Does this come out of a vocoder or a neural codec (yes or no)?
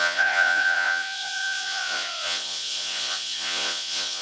yes